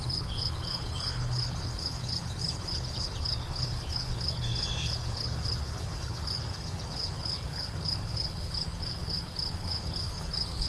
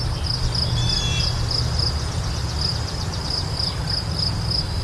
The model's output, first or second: first